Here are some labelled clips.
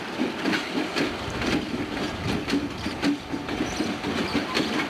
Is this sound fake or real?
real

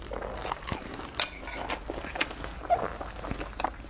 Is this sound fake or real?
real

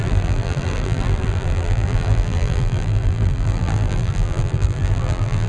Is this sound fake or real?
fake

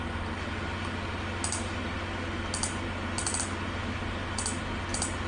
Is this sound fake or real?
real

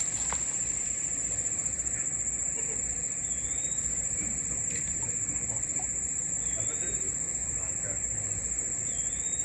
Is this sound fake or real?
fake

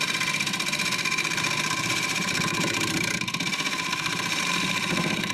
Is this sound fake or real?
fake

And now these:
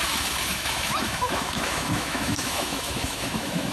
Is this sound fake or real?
fake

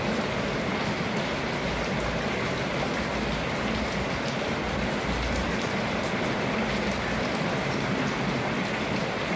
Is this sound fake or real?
real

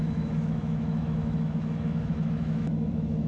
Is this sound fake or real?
fake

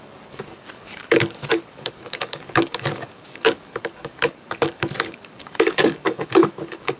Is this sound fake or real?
fake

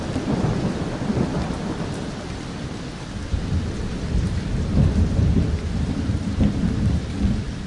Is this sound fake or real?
fake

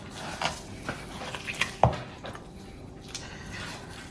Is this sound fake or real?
real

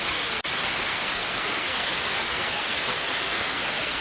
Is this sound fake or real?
fake